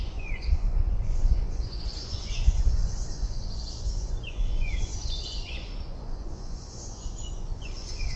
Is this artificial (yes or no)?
yes